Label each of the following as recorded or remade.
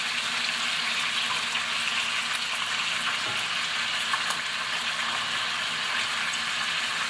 recorded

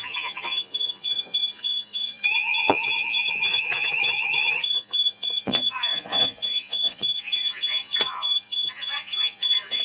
remade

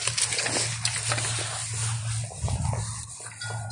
recorded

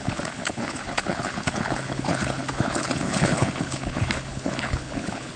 remade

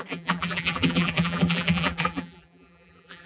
remade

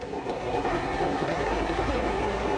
remade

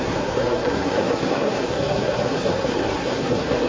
remade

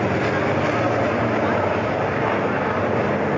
recorded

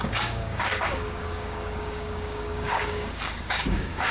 remade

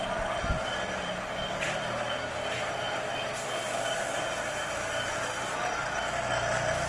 recorded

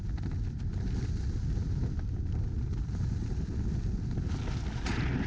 recorded